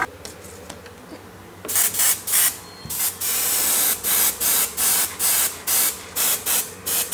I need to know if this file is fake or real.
real